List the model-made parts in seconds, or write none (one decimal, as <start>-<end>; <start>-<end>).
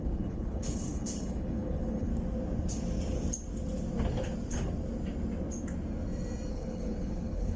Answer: 0.0-2.1; 6.5-7.6